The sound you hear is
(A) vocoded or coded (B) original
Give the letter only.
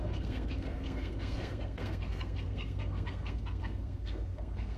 A